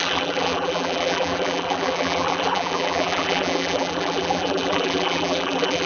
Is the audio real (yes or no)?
no